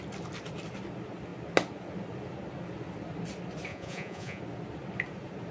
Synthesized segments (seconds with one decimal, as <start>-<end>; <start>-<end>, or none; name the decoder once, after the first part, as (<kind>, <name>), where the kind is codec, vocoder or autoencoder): 3.7-4.4 (vocoder, Vocos)